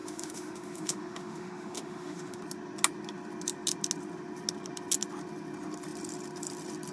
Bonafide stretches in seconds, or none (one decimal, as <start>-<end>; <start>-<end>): 2.4-6.9